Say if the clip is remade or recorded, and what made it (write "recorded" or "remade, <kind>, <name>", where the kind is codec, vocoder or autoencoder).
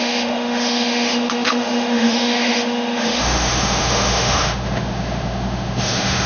remade, autoencoder, DAC-VAE